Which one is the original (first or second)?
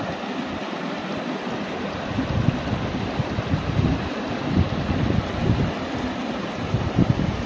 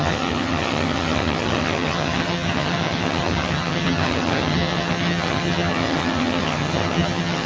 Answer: first